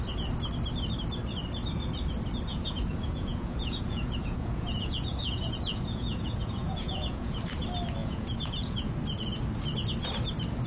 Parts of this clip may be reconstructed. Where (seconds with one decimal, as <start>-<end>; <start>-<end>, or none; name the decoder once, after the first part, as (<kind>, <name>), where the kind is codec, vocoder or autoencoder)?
2.5-7.4 (vocoder, Vocos); 8.0-8.9